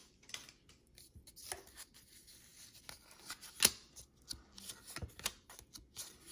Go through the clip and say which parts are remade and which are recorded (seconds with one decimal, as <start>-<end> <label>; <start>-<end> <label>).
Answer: 0.0-6.3 recorded